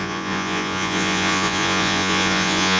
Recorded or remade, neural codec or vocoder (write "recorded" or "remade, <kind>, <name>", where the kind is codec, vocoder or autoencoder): remade, vocoder, Vocos